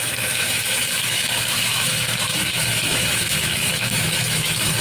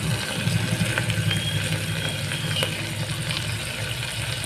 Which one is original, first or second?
second